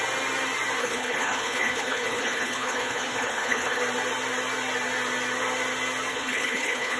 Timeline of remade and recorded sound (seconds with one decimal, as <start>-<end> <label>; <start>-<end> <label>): 0.0-0.8 recorded; 0.8-3.8 remade; 3.8-6.1 recorded; 6.1-7.0 remade